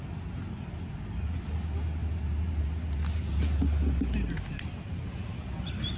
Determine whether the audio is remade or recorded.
recorded